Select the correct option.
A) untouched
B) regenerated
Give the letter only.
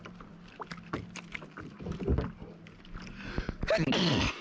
A